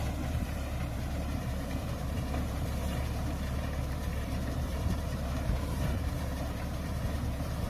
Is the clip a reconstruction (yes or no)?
yes